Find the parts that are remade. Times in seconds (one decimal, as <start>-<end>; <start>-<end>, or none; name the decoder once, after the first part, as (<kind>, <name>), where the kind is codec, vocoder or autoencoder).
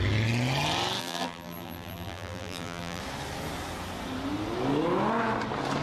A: 1.0-3.0 (vocoder, BigVGAN v2)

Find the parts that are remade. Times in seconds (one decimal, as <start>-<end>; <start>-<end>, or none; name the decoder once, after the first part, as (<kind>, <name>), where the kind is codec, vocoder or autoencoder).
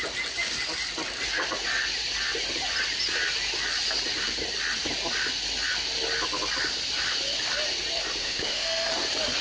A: 8.2-8.9 (autoencoder, DAC-VAE)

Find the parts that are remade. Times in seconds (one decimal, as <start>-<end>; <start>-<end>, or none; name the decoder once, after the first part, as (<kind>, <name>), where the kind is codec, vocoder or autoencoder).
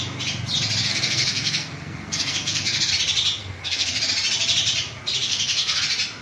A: 0.9-2.9 (codec, SNAC); 3.4-4.0; 5.3-5.8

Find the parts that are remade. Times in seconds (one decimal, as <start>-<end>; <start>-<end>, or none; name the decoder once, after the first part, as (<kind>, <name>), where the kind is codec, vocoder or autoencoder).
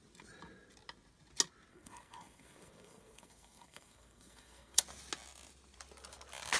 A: 1.7-4.8 (codec, SNAC)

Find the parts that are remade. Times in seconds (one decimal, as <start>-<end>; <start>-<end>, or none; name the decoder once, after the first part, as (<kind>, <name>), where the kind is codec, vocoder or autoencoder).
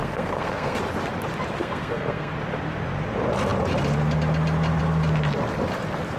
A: 0.0-0.8 (codec, SNAC); 1.6-2.3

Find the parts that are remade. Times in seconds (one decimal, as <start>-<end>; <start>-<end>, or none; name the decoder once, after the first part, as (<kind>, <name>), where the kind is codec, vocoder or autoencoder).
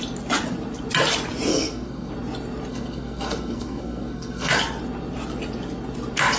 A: 1.5-2.1 (codec, SNAC); 2.7-4.5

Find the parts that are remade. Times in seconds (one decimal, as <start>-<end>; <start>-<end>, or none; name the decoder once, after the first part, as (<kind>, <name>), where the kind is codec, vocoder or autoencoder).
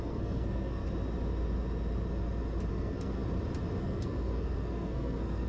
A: 0.0-0.8 (codec, SNAC); 2.7-3.2; 3.8-5.5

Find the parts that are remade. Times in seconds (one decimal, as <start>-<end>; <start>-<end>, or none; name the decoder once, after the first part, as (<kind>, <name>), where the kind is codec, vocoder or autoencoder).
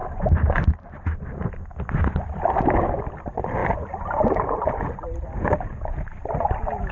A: 0.0-1.0 (vocoder, BigVGAN v2); 3.6-6.5